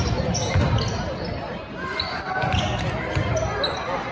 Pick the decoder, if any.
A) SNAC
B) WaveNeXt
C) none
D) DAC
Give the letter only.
C